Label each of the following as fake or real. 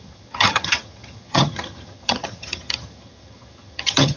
fake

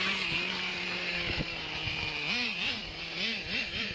fake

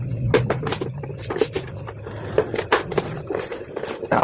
real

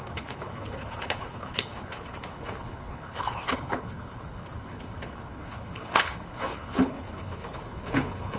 fake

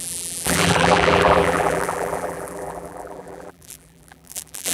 fake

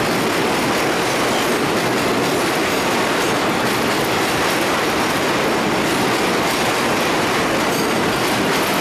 real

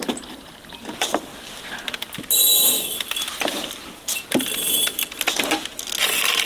real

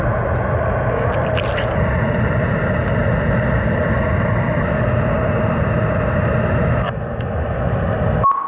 real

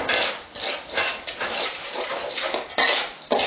real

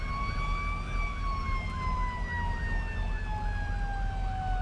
real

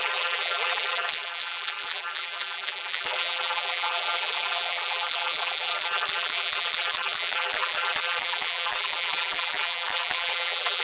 fake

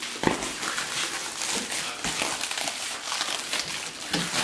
real